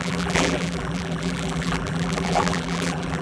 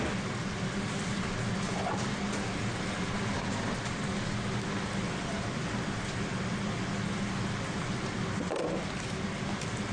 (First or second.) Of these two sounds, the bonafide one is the second